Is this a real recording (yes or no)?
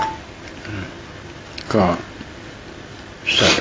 yes